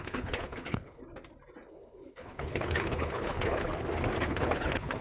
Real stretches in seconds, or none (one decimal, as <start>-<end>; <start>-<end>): 1.0-1.7; 3.7-4.3